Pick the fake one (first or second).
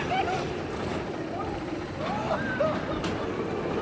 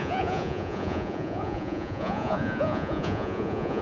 second